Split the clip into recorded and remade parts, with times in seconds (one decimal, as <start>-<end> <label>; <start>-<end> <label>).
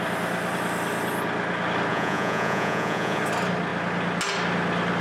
0.0-1.9 recorded; 1.9-3.2 remade; 3.2-5.0 recorded